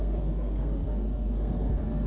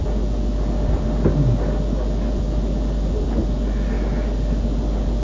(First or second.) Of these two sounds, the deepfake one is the first